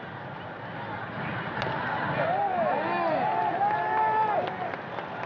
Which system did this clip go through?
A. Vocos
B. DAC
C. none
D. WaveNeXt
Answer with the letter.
C